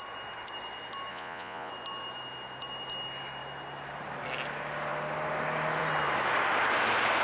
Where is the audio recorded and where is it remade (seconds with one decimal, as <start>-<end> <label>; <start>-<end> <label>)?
0.0-1.1 recorded; 1.1-1.7 remade; 1.7-7.2 recorded